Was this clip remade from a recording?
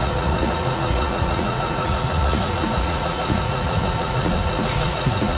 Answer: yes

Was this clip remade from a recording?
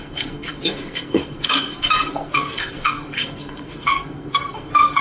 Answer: yes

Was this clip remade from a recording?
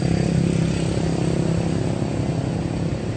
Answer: no